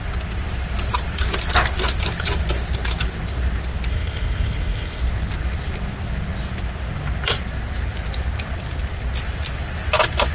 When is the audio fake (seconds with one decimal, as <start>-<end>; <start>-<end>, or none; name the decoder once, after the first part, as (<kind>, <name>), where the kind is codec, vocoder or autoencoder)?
3.9-5.0 (codec, ZipCodec)